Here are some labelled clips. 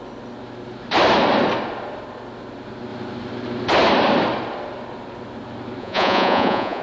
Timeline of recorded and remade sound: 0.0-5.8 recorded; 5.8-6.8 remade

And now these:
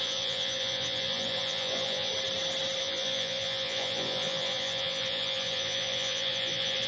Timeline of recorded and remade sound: 0.0-2.1 remade; 2.1-2.8 recorded; 2.8-6.9 remade